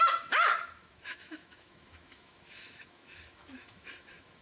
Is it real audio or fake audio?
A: fake